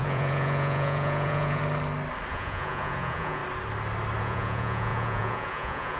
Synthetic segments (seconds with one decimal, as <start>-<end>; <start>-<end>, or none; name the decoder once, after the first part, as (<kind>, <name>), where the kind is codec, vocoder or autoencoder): 0.0-1.6 (vocoder, Vocos); 2.3-3.4; 4.2-6.0